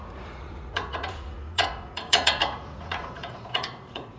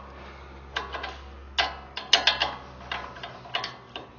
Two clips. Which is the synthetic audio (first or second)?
first